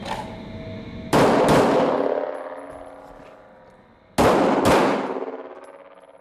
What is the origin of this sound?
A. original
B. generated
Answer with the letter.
A